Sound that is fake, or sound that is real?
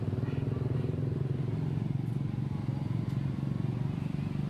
real